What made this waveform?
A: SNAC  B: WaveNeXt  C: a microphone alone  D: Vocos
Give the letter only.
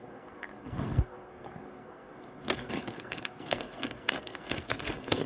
A